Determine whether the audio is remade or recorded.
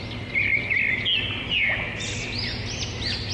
recorded